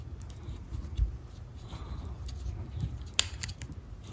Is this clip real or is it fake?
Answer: real